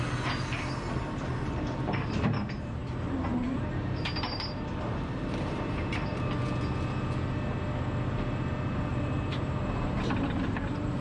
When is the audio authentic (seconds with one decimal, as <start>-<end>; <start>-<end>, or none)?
2.8-3.6; 6.1-8.9